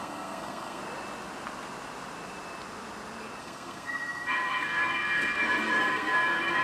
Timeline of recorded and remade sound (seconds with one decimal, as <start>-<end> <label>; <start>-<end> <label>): 0.0-0.8 remade; 0.8-3.4 recorded; 3.4-6.6 remade